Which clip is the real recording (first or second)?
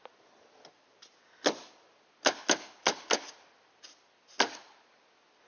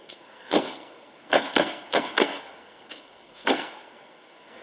first